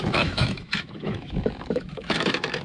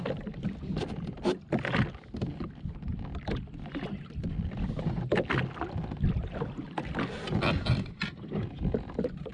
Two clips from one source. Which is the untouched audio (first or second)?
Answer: second